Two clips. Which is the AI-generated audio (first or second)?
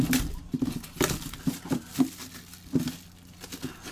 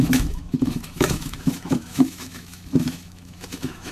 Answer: second